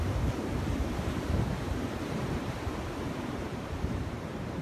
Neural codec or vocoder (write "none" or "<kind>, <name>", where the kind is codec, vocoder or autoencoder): vocoder, BigVGAN v2